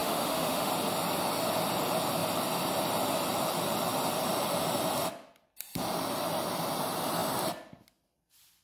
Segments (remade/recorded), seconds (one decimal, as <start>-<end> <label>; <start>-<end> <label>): 0.0-0.7 remade; 0.7-8.6 recorded